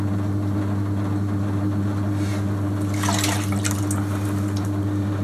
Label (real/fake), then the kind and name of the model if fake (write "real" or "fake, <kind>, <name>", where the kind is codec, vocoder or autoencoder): real